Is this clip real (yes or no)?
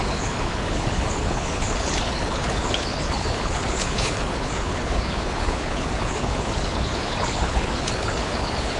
no